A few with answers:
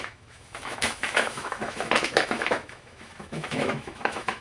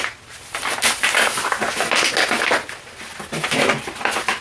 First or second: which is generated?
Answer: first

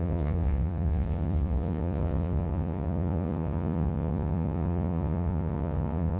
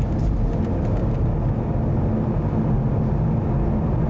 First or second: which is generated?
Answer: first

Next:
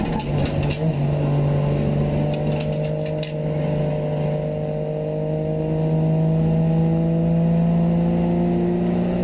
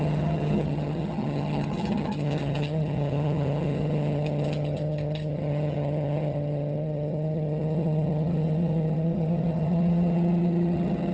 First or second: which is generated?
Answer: second